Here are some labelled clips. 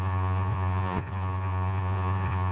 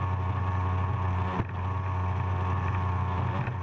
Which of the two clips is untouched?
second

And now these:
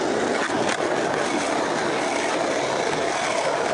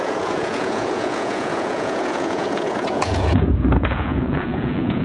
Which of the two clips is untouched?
first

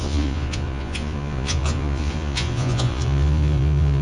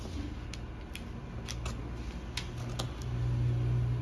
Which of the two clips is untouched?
second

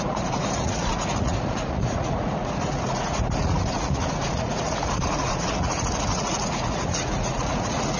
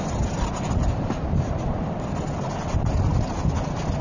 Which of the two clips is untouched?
second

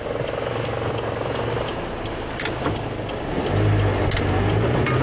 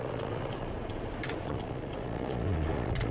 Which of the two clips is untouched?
first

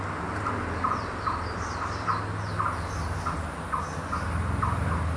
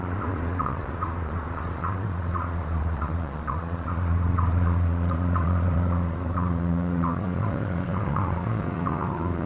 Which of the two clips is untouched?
first